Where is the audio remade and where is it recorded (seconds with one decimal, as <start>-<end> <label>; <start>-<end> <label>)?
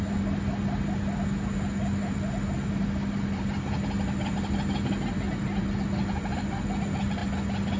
0.0-7.8 recorded